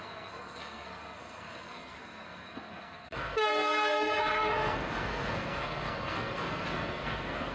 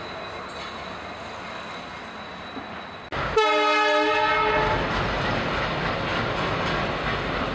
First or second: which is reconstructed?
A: first